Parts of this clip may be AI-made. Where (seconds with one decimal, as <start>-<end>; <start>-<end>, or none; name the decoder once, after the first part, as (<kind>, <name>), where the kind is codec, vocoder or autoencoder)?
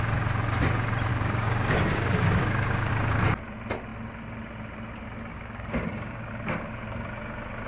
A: 1.1-2.9 (codec, DAC); 5.3-6.3